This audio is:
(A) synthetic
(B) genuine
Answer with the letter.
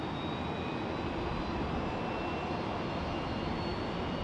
B